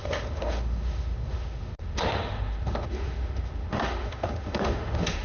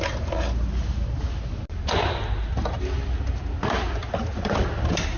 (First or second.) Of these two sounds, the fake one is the first